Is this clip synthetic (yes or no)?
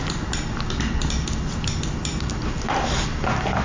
no